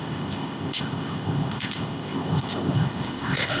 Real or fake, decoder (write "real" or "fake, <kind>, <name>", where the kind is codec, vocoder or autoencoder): fake, codec, ZipCodec